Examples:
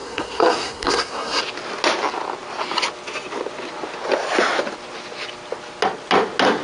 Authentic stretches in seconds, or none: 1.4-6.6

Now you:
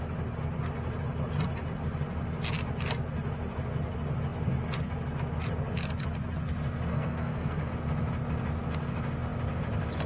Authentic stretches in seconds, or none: 0.0-6.9; 7.7-10.1